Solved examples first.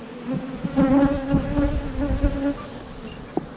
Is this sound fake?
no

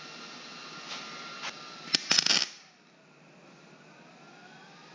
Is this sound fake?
no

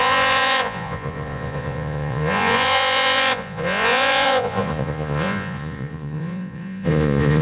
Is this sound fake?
yes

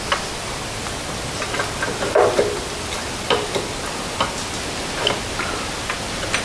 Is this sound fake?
no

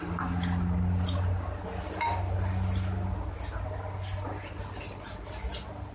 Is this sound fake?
no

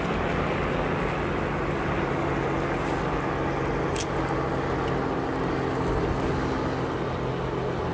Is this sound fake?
no